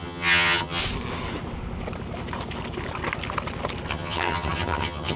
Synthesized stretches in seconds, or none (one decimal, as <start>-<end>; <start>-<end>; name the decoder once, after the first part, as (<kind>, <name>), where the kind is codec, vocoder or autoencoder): 0.0-0.8 (vocoder, HiFi-GAN); 3.9-5.2

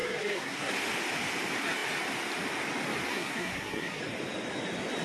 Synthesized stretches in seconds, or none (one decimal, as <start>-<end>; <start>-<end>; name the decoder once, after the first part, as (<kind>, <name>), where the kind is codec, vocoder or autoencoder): 0.0-0.7 (codec, SNAC); 3.1-4.0

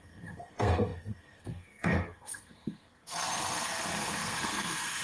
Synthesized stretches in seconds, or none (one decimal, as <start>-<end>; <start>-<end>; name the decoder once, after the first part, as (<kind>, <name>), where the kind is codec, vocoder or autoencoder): 0.0-5.0 (codec, SNAC)

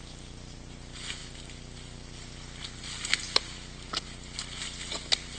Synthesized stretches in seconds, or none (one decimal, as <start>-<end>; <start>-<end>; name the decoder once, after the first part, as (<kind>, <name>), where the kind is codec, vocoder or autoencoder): none

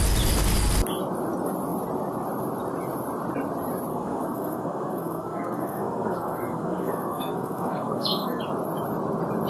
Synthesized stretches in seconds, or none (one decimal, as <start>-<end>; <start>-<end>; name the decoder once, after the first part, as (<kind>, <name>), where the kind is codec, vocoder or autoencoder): 3.9-8.4 (codec, SNAC)

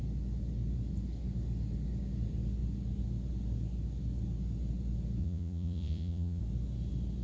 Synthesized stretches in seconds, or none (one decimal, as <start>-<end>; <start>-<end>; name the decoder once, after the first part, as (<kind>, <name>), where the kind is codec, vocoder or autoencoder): 5.2-6.4 (vocoder, Vocos)

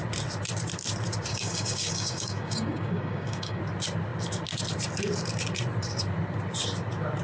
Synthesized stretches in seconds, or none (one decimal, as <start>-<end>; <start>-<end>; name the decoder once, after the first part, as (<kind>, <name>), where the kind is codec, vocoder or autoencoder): 1.3-3.6 (codec, DAC)

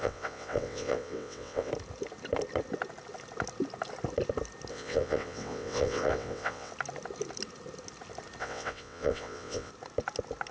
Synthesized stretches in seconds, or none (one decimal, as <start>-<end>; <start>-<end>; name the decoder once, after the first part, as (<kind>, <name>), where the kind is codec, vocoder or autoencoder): 0.0-1.7 (vocoder, WaveNeXt); 4.7-6.7; 8.4-9.7